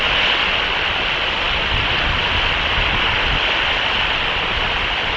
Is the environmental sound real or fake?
real